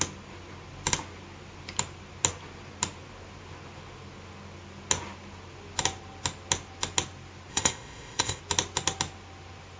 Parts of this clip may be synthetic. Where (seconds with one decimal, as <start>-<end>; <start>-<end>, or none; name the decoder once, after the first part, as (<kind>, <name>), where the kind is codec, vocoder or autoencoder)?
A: 7.5-8.4 (codec, ZipCodec)